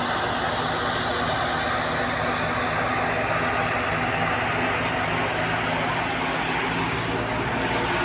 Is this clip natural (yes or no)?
yes